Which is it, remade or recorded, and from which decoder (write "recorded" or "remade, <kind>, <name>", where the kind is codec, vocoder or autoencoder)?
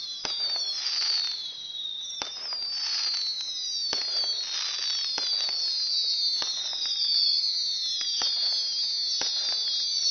recorded